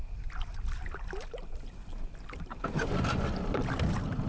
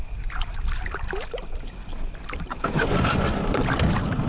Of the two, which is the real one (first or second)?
first